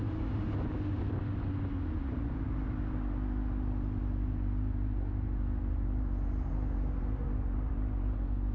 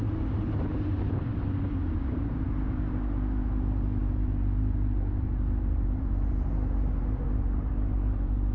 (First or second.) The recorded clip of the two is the first